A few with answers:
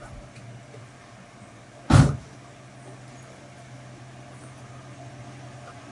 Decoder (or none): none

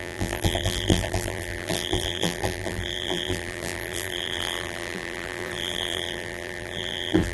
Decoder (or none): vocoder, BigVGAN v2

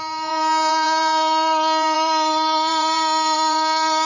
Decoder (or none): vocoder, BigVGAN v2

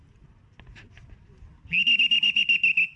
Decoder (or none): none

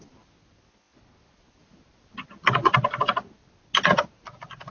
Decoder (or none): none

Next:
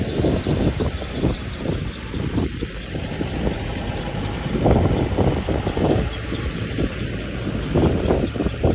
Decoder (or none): vocoder, BigVGAN v2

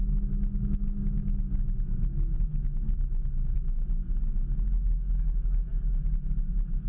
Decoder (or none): none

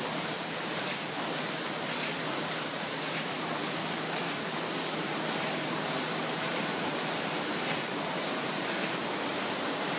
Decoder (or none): vocoder, BigVGAN v2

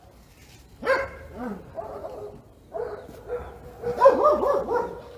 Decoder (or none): vocoder, BigVGAN v2